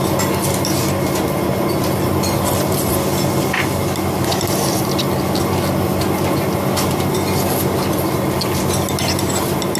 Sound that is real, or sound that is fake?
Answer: real